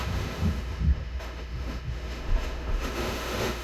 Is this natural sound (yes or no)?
no